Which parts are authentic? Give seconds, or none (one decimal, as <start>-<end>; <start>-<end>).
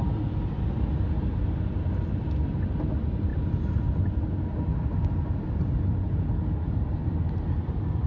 0.0-8.1